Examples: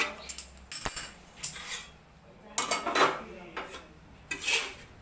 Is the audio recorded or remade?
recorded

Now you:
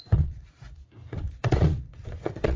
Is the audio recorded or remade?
remade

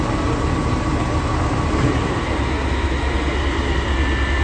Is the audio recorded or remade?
recorded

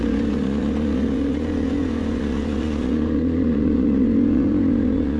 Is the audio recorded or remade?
remade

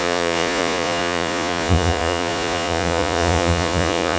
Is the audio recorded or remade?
remade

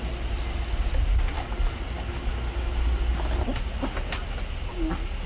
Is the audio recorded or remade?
recorded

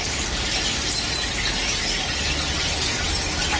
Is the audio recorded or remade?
recorded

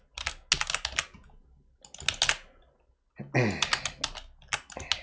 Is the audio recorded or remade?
recorded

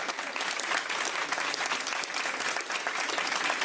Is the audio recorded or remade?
recorded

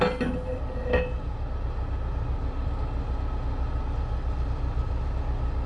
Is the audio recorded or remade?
recorded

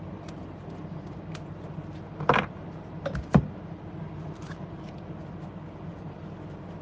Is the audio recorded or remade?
recorded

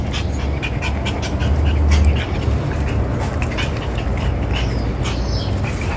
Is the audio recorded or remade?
recorded